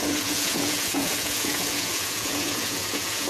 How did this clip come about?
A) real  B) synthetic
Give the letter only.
B